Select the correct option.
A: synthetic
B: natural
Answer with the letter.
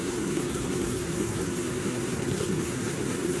A